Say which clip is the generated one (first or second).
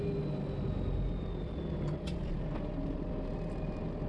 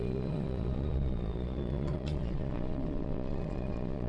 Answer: second